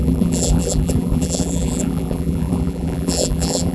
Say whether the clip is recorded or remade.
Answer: remade